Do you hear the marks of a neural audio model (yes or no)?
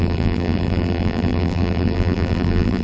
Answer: yes